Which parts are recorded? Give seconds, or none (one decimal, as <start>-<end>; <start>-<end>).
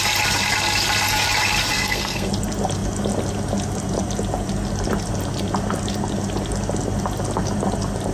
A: 0.0-1.7; 2.3-8.1